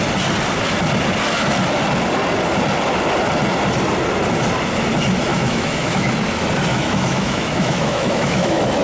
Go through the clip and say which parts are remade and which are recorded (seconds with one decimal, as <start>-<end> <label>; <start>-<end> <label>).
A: 0.0-5.3 recorded; 5.3-6.1 remade; 6.1-6.7 recorded; 6.7-8.8 remade